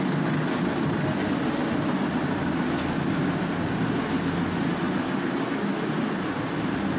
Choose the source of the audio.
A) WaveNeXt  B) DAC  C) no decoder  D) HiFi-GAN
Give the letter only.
C